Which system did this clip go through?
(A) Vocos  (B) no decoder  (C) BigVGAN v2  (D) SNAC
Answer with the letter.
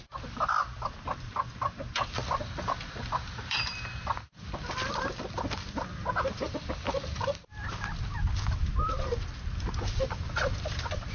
C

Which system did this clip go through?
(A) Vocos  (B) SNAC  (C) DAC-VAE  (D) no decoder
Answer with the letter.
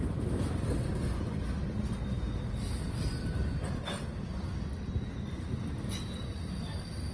D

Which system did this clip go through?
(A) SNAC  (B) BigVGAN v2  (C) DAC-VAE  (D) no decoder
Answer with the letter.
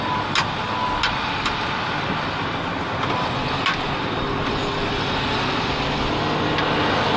D